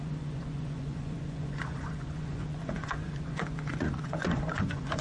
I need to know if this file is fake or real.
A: fake